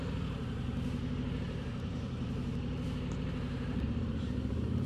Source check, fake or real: fake